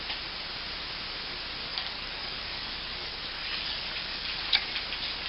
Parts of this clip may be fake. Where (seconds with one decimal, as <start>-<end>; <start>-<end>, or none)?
1.7-4.7